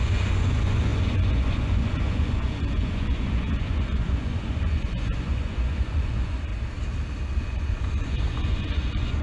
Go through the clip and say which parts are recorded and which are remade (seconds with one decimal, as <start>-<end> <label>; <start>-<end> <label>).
0.0-6.5 remade; 6.5-7.4 recorded; 7.4-9.2 remade